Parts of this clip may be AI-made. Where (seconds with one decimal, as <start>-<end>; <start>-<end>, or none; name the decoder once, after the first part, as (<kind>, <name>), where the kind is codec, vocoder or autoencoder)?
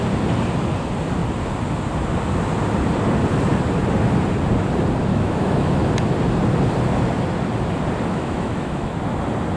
5.1-5.9 (autoencoder, DAC-VAE); 8.1-8.9